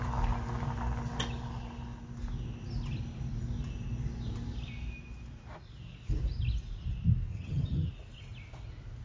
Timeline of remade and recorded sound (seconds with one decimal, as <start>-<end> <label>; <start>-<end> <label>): 0.0-7.3 recorded; 7.3-7.9 remade; 7.9-9.0 recorded